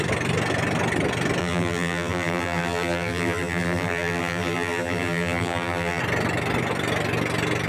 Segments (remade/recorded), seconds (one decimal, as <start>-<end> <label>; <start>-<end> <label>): 0.0-1.4 recorded; 1.4-6.0 remade; 6.0-7.7 recorded